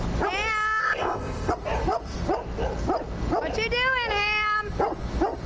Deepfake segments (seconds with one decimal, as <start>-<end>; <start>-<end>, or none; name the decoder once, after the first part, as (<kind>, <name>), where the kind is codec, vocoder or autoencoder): 0.8-1.5 (codec, ZipCodec)